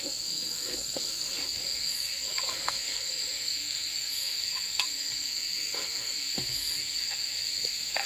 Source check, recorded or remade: remade